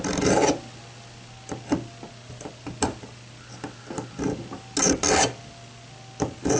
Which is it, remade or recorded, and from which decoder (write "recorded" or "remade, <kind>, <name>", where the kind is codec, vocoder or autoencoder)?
recorded